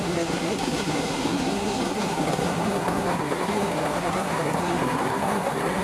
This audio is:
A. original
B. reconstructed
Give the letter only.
B